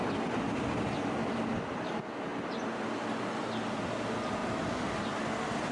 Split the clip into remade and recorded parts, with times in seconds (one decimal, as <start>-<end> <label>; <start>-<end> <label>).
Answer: 0.0-5.7 recorded